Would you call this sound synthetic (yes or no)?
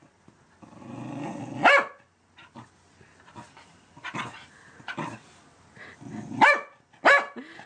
no